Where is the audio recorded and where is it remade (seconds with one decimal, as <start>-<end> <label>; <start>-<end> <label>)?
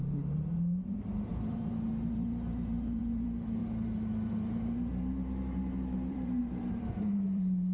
0.0-7.7 remade